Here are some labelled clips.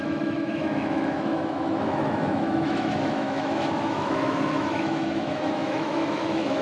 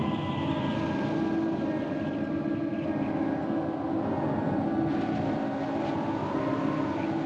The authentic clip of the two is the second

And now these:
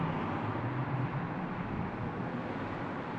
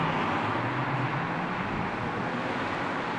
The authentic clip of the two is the second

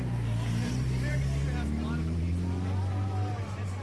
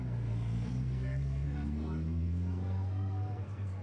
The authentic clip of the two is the first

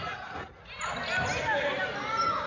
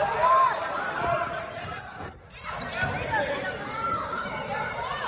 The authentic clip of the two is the first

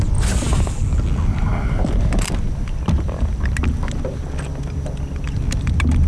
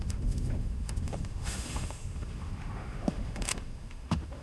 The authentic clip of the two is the first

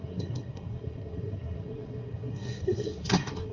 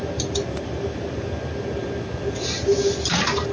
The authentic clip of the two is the second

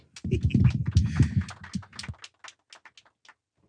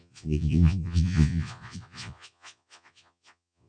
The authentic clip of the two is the first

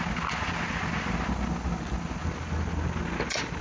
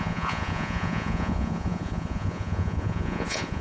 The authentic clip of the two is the first